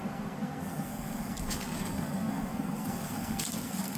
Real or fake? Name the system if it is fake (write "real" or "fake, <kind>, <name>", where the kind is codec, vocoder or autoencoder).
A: fake, codec, SNAC